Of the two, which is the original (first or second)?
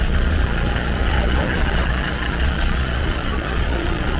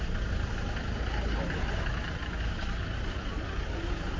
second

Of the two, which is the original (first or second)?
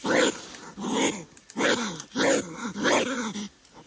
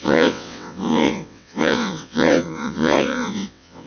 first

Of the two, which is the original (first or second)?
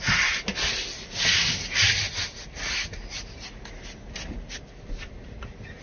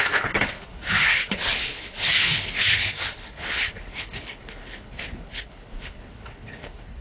first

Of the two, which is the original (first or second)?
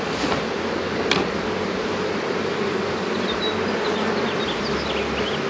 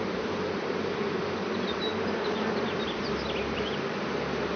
first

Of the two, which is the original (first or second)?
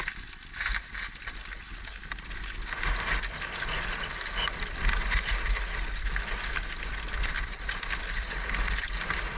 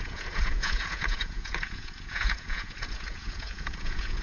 first